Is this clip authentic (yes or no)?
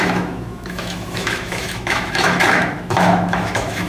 no